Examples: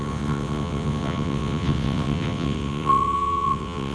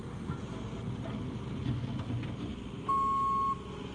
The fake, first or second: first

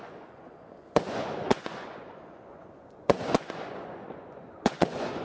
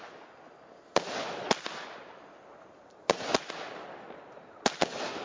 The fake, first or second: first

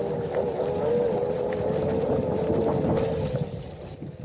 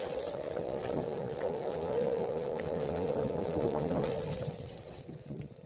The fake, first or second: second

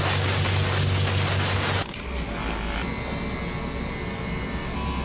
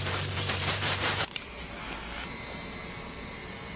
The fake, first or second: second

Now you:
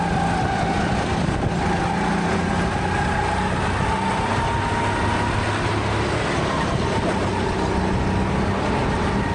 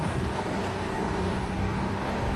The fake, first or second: second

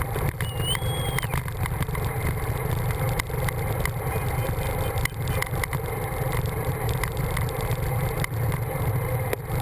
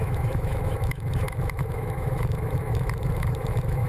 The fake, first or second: second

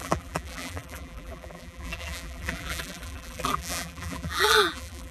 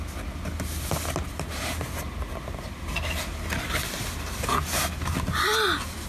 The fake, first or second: first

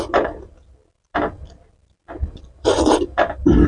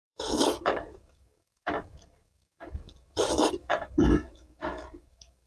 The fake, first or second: second